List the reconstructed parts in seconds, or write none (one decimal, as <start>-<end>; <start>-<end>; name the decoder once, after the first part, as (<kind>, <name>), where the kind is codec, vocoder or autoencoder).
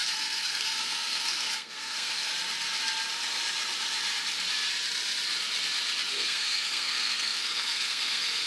0.0-2.3 (codec, SNAC); 6.1-8.5